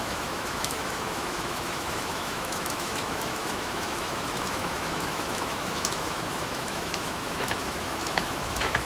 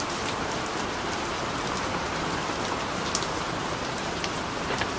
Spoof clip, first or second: first